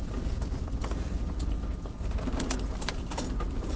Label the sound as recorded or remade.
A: recorded